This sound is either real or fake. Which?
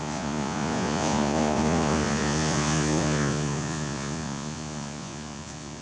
fake